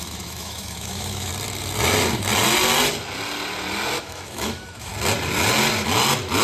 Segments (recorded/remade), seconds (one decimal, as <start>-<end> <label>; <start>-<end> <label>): 0.0-1.3 remade; 1.3-4.0 recorded; 4.0-4.9 remade; 4.9-6.4 recorded